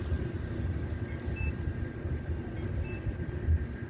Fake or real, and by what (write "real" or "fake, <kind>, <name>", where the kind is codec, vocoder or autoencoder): real